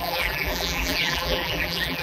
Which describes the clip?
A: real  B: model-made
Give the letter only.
B